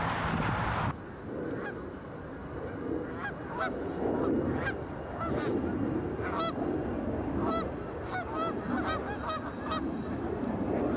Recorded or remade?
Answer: recorded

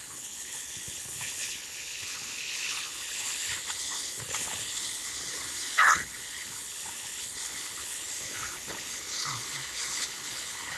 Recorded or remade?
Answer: remade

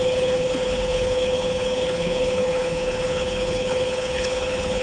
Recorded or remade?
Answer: remade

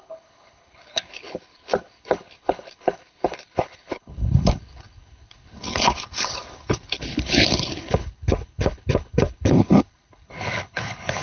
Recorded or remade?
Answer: remade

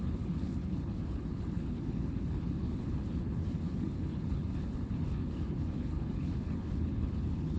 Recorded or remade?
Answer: remade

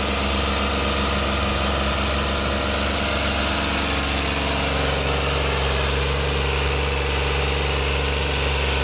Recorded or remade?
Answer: recorded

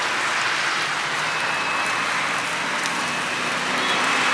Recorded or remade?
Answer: recorded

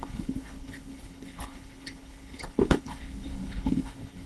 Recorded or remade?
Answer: remade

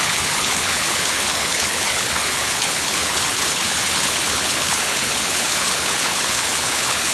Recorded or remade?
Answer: remade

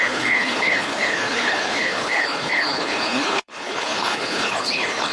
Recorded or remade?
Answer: remade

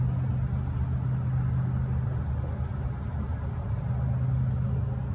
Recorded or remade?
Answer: recorded